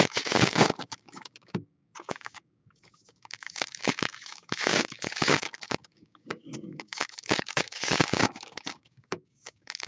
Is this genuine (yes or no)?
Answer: no